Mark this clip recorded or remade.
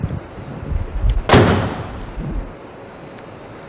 recorded